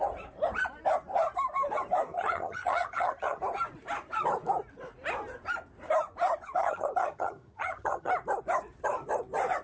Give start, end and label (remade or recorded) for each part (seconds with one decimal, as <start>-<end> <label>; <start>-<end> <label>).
0.0-2.1 recorded; 2.1-3.4 remade; 3.4-6.6 recorded; 6.6-8.1 remade; 8.1-9.6 recorded